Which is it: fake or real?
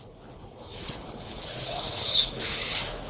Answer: fake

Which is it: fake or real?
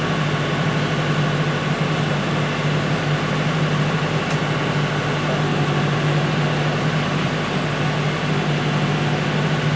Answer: real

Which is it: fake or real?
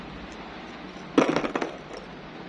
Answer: real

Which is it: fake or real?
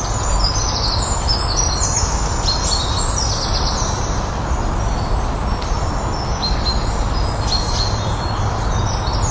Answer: real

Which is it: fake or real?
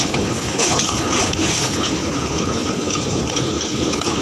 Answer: fake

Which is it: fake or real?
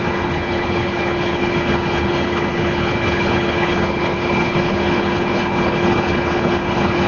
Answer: fake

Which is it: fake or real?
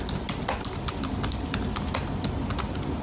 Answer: real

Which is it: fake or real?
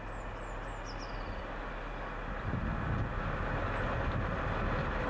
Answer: real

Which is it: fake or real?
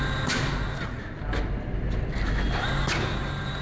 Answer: real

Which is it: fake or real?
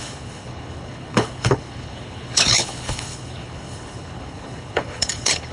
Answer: fake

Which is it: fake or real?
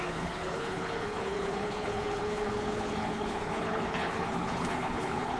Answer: fake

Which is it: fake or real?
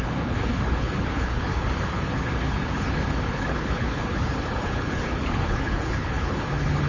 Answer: fake